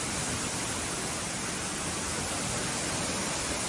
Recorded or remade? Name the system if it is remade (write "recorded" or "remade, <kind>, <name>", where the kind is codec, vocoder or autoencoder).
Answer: recorded